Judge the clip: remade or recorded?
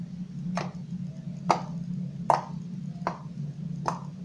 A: recorded